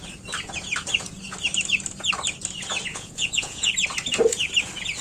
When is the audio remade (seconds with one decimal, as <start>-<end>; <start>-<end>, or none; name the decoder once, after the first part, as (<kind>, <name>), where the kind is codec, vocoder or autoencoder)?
2.9-3.7 (vocoder, Vocos)